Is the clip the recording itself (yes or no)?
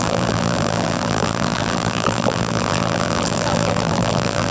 no